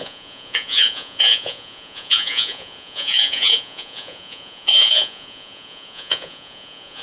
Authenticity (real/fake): fake